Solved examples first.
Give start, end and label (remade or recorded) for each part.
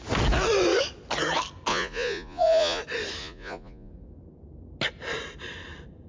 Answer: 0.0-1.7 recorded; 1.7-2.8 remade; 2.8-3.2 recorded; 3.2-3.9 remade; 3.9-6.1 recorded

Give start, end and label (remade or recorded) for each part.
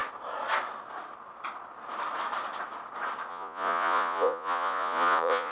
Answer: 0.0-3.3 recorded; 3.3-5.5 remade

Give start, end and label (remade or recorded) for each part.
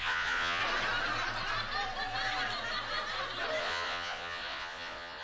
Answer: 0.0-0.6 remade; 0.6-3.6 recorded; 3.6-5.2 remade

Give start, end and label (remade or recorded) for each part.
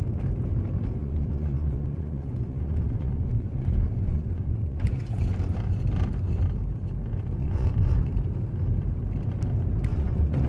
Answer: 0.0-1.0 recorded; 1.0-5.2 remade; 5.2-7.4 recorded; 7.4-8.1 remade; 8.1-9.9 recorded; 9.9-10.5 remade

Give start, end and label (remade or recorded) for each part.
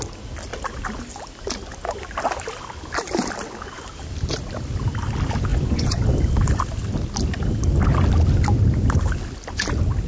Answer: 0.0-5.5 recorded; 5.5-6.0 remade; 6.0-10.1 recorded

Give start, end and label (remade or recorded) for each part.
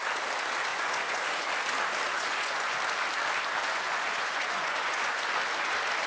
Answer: 0.0-0.7 recorded; 0.7-1.5 remade; 1.5-2.1 recorded; 2.1-2.8 remade; 2.8-3.6 recorded; 3.6-5.2 remade; 5.2-6.1 recorded